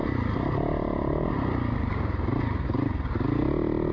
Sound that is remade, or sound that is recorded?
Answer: recorded